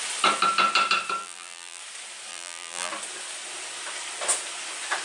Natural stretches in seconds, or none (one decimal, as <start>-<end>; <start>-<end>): 0.0-1.2; 1.8-2.3; 2.9-5.0